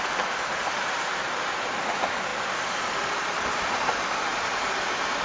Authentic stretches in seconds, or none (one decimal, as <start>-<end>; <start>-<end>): 0.0-5.2